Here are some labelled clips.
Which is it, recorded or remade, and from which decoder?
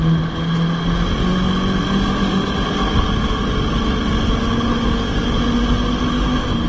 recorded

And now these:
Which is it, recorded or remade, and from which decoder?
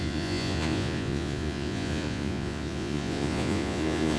remade, vocoder, Vocos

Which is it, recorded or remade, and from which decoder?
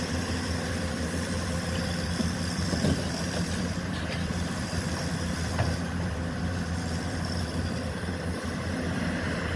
remade, vocoder, BigVGAN v2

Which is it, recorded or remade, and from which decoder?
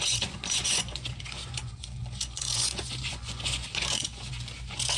remade, vocoder, Vocos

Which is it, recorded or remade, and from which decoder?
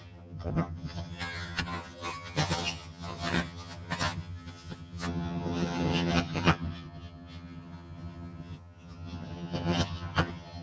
remade, vocoder, HiFi-GAN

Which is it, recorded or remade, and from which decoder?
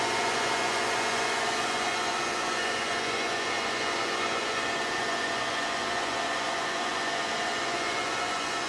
remade, vocoder, Vocos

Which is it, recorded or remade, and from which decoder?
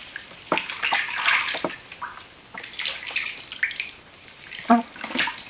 recorded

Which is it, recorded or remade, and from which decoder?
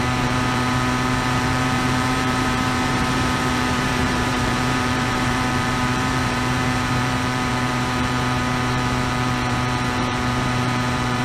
remade, vocoder, BigVGAN v2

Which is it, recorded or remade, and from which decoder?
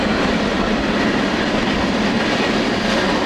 recorded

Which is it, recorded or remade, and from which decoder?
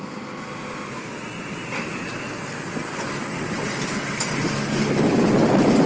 recorded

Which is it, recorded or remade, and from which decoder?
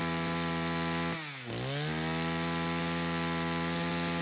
recorded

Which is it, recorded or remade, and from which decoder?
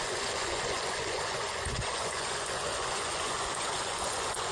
remade, vocoder, Vocos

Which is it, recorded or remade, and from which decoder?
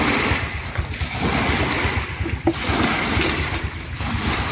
recorded